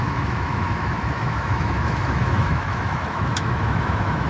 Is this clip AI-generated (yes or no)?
yes